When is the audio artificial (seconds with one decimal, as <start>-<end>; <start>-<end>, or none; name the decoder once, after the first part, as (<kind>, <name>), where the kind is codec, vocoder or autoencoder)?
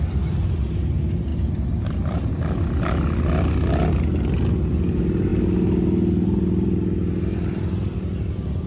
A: none